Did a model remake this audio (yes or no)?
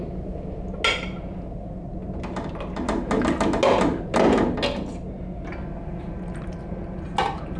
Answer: no